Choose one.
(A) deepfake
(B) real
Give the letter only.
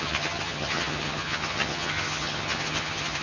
A